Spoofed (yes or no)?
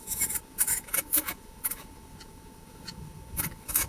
yes